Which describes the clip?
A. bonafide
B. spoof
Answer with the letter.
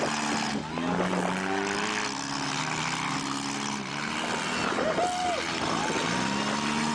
A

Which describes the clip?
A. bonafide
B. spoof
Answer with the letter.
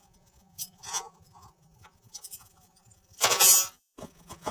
B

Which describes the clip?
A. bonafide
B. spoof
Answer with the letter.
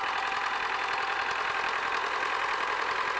A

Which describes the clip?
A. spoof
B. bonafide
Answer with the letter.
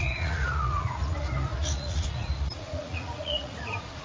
A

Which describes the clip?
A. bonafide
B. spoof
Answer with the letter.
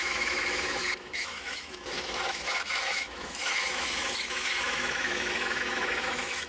B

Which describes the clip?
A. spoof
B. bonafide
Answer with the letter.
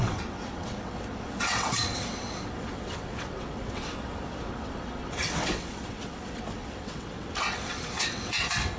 A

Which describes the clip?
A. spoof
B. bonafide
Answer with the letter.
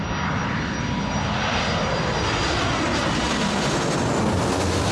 B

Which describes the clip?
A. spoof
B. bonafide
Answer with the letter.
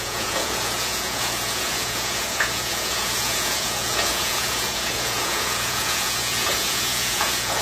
A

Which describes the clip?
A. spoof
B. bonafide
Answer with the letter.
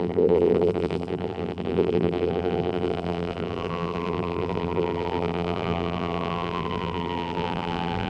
A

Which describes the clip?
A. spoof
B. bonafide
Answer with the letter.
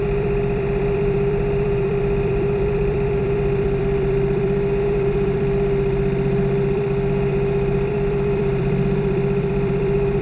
A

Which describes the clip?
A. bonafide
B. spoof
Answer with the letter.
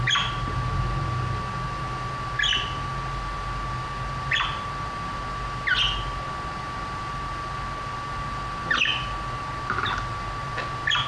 A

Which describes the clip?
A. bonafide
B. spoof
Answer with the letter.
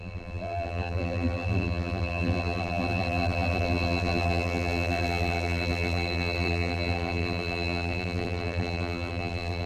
B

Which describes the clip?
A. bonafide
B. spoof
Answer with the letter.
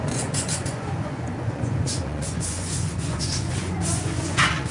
B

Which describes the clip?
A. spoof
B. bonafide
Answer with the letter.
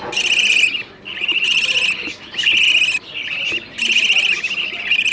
B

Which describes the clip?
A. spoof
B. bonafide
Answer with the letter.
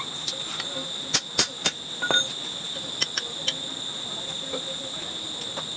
B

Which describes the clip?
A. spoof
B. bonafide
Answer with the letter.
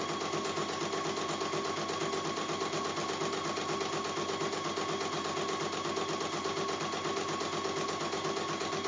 B